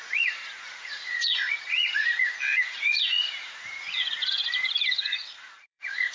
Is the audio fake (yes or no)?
yes